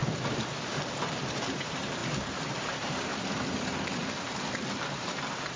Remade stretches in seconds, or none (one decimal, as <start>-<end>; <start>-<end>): 0.0-3.1; 4.2-5.6